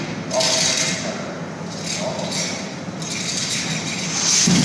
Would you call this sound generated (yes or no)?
no